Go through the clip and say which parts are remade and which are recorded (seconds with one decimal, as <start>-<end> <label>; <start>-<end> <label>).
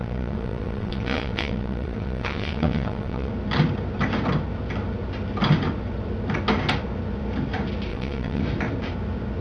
0.0-3.3 remade; 3.3-7.9 recorded; 7.9-8.4 remade; 8.4-9.4 recorded